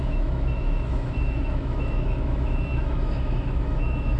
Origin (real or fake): fake